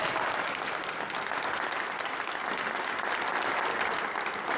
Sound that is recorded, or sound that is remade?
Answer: remade